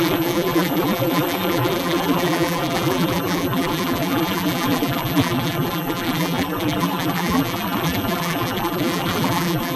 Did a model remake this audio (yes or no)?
yes